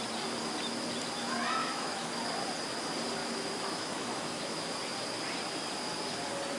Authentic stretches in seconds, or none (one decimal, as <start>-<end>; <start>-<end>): 0.0-1.6; 2.1-3.2; 4.6-6.6